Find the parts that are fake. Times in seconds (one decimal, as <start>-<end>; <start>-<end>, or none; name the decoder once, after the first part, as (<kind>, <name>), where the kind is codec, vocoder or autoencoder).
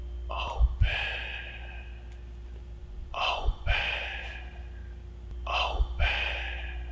2.8-3.8 (vocoder, Vocos)